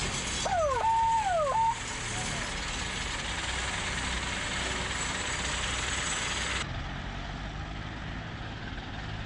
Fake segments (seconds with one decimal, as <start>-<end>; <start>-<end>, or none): none